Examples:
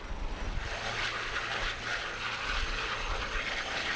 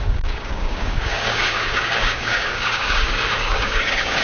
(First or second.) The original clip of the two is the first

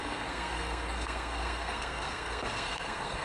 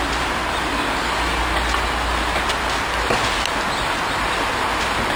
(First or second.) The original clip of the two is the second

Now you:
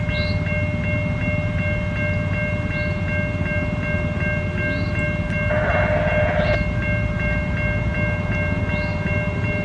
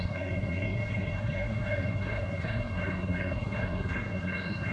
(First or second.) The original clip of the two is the first